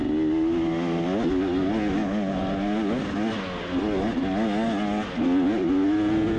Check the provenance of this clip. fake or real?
real